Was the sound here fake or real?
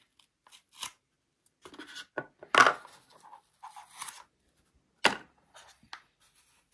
real